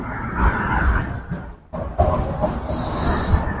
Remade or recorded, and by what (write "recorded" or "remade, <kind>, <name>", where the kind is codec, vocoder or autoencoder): recorded